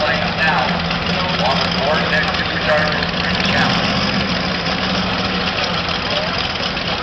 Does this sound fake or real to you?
real